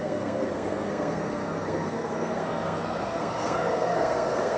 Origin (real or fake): fake